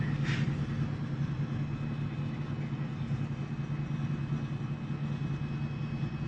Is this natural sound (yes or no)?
yes